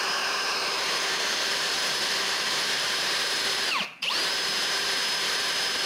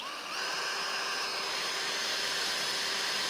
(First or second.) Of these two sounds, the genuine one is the second